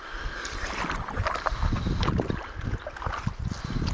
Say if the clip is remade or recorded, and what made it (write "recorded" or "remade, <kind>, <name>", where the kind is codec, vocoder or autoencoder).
recorded